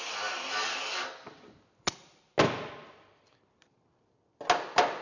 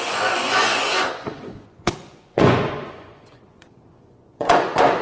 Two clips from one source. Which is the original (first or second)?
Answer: first